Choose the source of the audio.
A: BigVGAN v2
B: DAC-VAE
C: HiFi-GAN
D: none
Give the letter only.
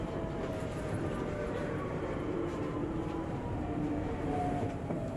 A